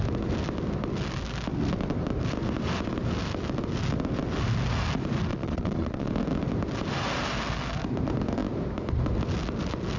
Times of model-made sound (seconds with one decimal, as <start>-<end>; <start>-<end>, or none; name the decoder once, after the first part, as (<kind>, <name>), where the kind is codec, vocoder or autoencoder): 5.3-6.1 (vocoder, Vocos)